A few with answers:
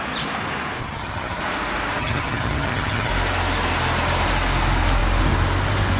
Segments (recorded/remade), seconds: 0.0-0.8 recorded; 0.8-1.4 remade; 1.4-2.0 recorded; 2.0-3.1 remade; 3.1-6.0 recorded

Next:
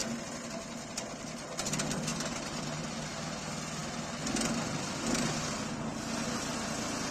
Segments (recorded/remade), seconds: 0.0-2.1 recorded; 2.1-2.9 remade; 2.9-7.1 recorded

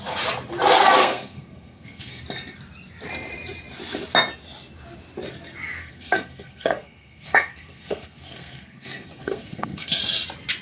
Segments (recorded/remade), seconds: 0.0-1.0 recorded; 1.0-2.2 remade; 2.2-5.8 recorded; 5.8-10.0 remade; 10.0-10.6 recorded

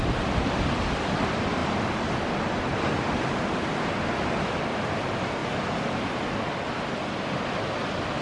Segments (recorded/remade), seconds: 0.0-8.2 recorded

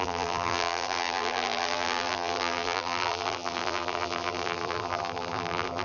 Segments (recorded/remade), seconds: 0.0-5.8 remade

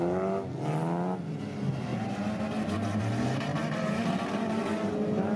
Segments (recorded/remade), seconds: 0.0-3.5 recorded; 3.5-4.7 remade; 4.7-5.4 recorded

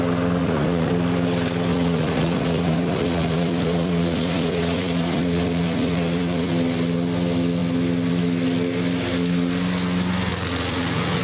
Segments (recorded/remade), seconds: 0.0-0.4 recorded; 0.4-0.9 remade; 0.9-1.7 recorded; 1.7-6.5 remade; 6.5-10.3 recorded; 10.3-11.2 remade

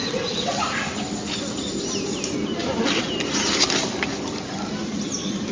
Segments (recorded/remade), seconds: 0.0-0.6 remade; 0.6-5.5 recorded